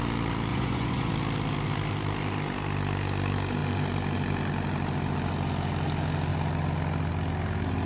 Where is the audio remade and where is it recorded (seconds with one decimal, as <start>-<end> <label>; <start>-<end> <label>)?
0.0-0.5 recorded; 0.5-1.1 remade; 1.1-7.8 recorded